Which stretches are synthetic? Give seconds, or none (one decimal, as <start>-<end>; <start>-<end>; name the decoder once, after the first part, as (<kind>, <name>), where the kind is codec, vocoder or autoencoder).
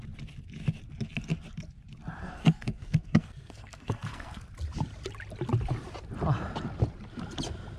2.2-4.5 (codec, SNAC)